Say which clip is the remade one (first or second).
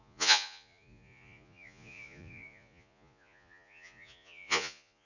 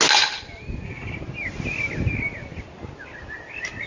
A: first